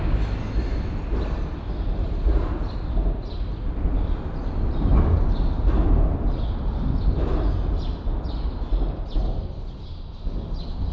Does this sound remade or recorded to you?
recorded